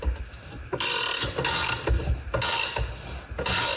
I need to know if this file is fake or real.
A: real